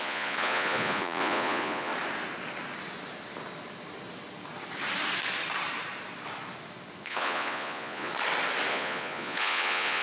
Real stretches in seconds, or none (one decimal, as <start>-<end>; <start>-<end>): 1.9-7.0; 8.1-8.7